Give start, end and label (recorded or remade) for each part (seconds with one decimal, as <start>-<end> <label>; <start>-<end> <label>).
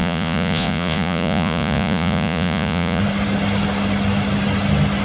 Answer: 0.0-3.0 remade; 3.0-5.0 recorded